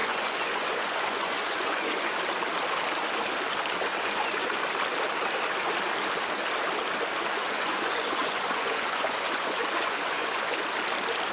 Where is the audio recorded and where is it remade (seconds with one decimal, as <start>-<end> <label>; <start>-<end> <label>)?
0.0-2.1 remade; 2.1-3.9 recorded; 3.9-4.6 remade; 4.6-7.2 recorded; 7.2-10.6 remade; 10.6-11.3 recorded